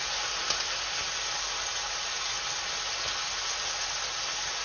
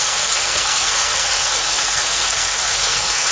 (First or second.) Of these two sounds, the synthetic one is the second